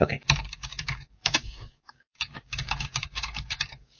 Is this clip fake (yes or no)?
yes